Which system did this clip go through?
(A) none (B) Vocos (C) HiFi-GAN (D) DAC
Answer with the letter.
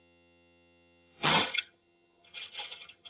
C